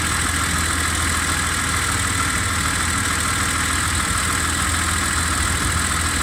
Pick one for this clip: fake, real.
real